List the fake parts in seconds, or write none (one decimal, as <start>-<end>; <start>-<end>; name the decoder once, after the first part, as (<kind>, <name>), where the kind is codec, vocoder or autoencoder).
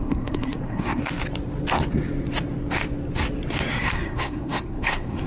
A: 0.0-1.0 (codec, SNAC); 3.7-5.3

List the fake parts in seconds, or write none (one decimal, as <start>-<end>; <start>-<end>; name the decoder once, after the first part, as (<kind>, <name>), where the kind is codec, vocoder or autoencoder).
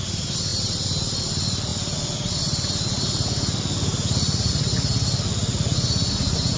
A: none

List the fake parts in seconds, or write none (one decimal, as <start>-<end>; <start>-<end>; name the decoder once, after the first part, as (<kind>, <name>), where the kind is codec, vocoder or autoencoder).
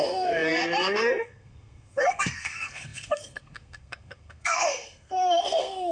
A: 0.0-5.9 (codec, SNAC)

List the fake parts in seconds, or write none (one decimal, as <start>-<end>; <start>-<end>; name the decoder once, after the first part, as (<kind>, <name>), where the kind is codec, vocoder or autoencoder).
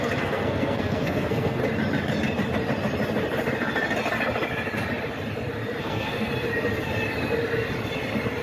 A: 0.0-1.6 (codec, SNAC); 5.8-6.3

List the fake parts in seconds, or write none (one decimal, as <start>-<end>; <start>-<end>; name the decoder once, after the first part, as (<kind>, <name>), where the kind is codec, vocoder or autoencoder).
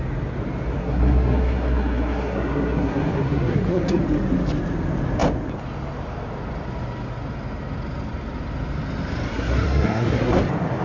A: 0.8-4.0 (codec, SNAC); 9.3-10.4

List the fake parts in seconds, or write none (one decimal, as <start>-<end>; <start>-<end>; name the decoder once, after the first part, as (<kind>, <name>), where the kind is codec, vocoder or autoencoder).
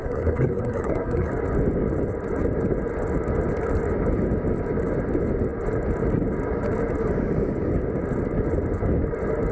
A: 0.0-1.3 (codec, SNAC)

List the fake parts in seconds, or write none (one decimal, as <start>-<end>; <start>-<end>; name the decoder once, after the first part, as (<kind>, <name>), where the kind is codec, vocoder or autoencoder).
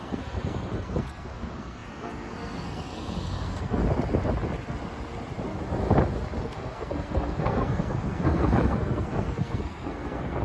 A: 0.0-3.8 (codec, SNAC); 6.4-10.4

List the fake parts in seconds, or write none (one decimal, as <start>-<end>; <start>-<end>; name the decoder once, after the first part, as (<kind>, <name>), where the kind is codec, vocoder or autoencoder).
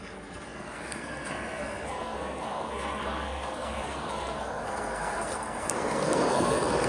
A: 0.0-6.9 (codec, SNAC)